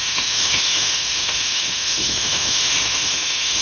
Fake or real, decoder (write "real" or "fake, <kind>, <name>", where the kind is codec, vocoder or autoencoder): fake, autoencoder, DAC-VAE